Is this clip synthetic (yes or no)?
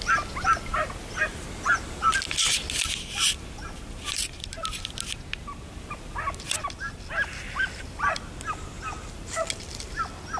no